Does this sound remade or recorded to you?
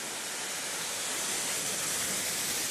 recorded